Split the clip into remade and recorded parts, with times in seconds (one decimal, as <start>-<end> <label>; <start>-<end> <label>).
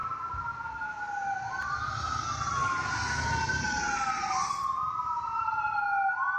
0.0-6.4 recorded